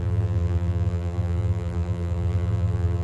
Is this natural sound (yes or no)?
no